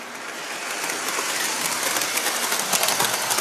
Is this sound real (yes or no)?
yes